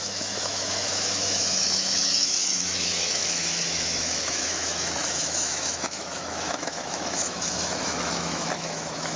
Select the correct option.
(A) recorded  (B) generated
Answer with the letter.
B